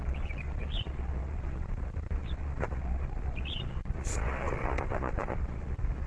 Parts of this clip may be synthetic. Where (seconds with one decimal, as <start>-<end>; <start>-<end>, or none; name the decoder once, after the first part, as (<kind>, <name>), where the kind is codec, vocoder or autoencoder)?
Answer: 0.0-6.1 (vocoder, Vocos)